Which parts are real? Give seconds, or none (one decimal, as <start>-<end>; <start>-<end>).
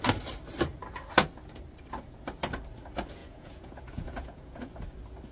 0.0-3.2; 4.8-5.3